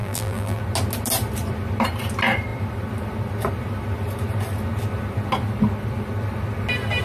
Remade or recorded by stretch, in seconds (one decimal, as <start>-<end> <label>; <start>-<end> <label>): 0.0-0.6 remade; 0.6-7.0 recorded